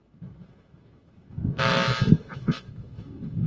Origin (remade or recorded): remade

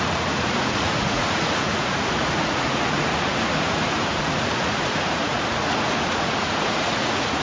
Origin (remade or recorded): remade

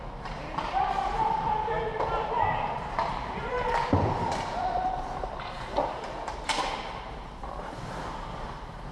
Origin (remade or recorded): remade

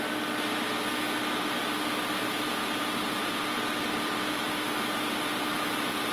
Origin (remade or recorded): recorded